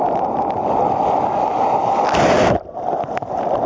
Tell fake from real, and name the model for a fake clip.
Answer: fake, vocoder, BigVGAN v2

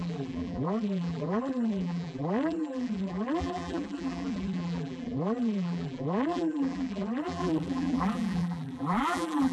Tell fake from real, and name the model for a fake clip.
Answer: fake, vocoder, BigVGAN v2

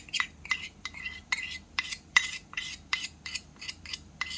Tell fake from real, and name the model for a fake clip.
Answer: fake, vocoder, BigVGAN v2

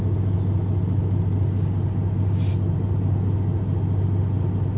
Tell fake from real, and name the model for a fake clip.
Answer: real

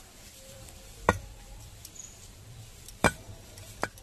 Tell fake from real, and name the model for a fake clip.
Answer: fake, vocoder, BigVGAN v2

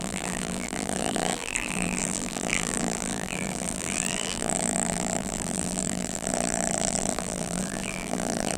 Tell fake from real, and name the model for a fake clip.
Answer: fake, vocoder, BigVGAN v2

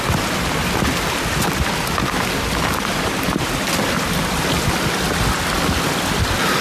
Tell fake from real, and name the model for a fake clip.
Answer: real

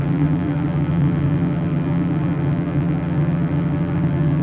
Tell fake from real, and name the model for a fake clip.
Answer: fake, vocoder, BigVGAN v2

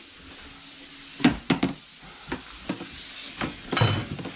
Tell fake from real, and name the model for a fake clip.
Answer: real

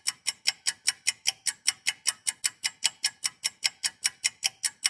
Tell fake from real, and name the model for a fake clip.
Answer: real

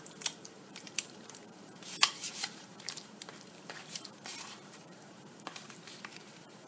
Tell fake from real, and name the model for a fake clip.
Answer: fake, vocoder, BigVGAN v2